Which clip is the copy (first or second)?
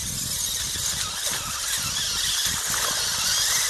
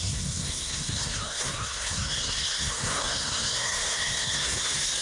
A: second